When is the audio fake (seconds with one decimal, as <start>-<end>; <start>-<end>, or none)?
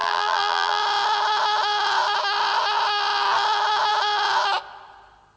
0.0-0.8